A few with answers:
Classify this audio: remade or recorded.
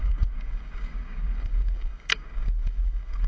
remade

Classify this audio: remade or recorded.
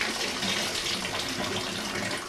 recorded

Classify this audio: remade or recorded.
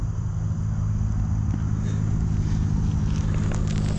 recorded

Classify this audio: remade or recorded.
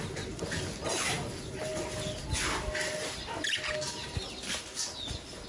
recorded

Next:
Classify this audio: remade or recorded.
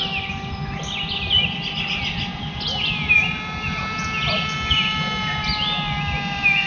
recorded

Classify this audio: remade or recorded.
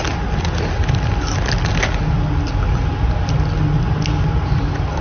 recorded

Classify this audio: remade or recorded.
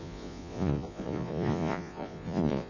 remade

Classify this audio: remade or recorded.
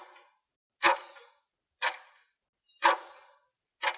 recorded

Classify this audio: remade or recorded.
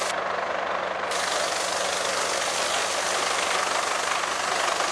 recorded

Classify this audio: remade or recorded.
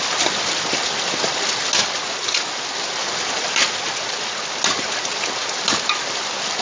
recorded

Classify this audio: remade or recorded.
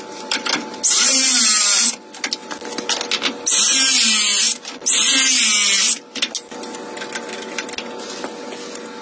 recorded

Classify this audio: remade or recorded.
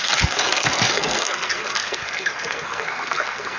remade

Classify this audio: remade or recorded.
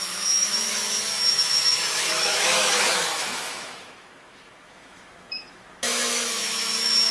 remade